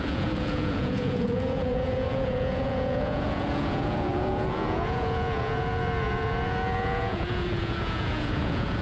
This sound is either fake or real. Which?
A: fake